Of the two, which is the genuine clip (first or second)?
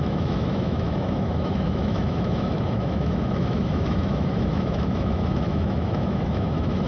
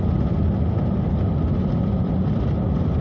second